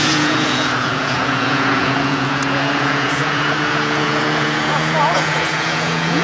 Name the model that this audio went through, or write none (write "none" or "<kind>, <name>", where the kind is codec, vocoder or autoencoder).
vocoder, Vocos